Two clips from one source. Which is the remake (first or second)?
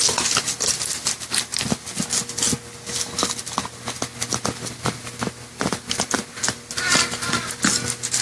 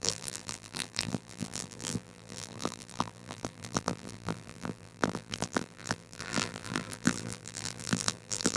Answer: second